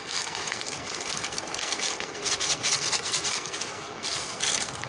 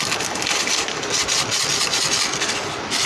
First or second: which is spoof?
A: first